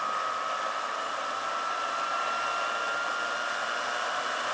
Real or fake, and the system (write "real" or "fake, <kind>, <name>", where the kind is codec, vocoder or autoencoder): real